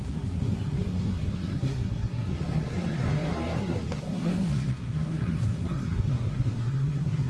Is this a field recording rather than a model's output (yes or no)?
no